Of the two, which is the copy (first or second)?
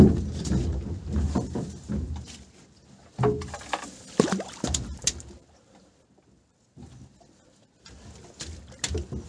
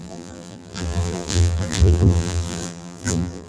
second